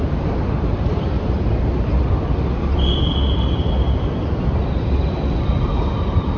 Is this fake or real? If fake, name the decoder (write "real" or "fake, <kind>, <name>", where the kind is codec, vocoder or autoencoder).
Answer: real